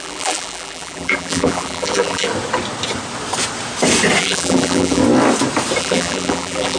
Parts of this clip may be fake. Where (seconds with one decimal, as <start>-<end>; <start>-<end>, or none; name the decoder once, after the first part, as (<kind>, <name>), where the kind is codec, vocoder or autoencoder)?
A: 0.0-2.3 (vocoder, BigVGAN v2); 4.2-5.0; 5.8-6.8